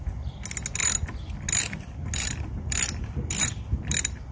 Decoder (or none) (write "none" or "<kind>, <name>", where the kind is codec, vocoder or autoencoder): none